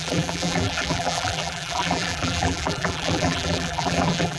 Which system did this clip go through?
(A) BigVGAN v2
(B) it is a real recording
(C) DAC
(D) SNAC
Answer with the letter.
A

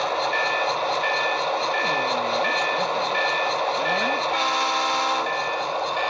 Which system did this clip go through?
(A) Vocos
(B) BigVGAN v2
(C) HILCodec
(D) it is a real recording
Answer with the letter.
D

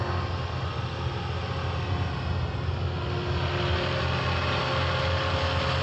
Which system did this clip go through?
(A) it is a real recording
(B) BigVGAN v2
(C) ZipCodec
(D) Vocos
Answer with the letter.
A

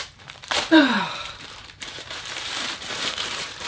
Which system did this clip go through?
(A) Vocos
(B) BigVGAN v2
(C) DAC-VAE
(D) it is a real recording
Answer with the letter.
B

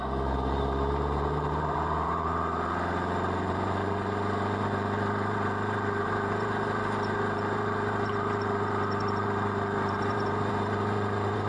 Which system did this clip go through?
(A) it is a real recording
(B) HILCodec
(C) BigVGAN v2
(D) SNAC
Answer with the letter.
C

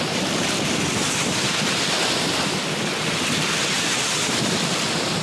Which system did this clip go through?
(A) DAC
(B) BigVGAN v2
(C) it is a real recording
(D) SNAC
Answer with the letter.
B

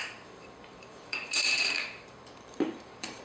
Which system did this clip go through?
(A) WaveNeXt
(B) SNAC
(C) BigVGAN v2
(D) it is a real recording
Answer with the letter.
C